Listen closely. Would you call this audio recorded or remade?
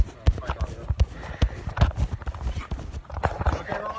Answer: recorded